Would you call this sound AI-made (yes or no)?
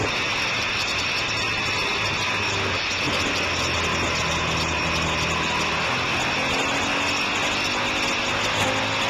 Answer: no